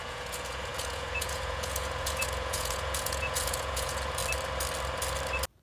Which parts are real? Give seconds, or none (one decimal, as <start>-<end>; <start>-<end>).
4.2-5.6